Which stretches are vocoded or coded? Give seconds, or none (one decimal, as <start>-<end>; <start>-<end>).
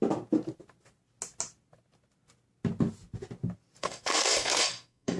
3.8-5.2